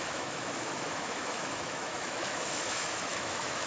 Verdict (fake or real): fake